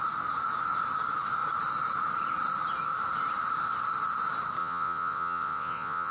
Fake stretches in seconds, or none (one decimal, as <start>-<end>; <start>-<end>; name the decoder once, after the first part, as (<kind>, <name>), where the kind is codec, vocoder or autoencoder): 4.6-6.1 (vocoder, Vocos)